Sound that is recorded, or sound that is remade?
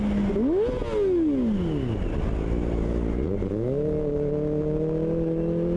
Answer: recorded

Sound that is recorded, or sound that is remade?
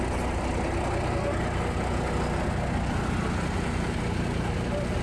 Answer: recorded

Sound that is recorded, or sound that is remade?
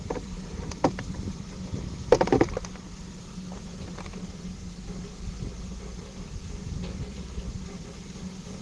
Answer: recorded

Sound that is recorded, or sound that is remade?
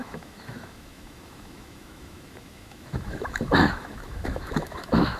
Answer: remade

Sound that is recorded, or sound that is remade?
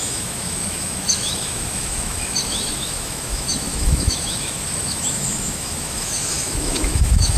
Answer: remade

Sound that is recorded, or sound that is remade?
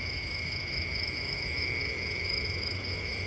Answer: remade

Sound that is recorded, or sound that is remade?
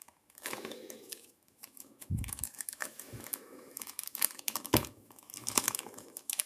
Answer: remade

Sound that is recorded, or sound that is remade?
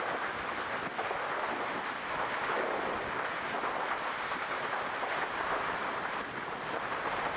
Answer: recorded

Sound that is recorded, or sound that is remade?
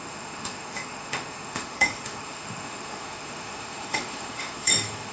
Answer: remade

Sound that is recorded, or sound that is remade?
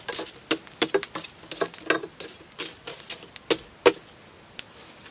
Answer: recorded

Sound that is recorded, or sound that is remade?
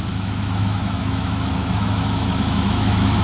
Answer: remade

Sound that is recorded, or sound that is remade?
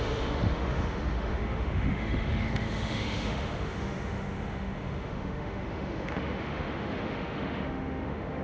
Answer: remade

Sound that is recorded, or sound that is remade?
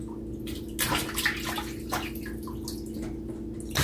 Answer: recorded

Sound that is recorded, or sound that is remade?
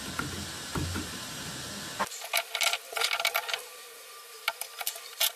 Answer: recorded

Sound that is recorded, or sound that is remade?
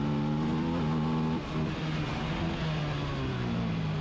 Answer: recorded